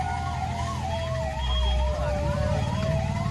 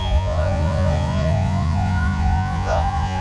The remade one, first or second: second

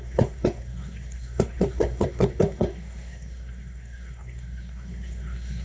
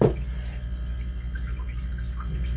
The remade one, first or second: first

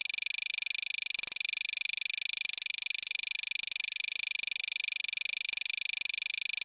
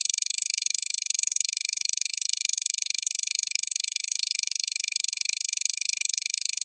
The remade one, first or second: second